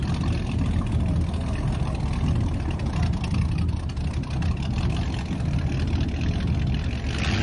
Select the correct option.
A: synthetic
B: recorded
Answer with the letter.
B